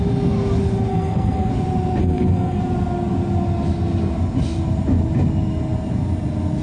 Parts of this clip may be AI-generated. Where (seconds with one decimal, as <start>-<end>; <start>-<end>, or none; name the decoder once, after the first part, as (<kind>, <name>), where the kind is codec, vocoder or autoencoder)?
0.9-1.5 (codec, SNAC); 2.0-2.6